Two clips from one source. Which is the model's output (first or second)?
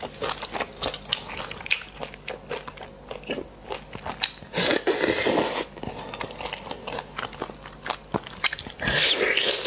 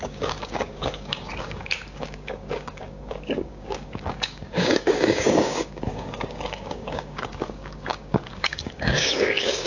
second